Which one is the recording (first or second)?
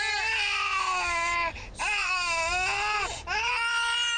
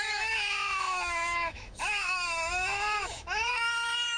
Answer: first